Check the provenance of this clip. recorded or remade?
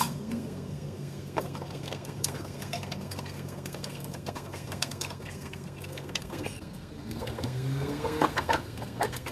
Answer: remade